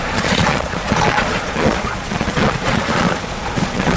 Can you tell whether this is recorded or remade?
remade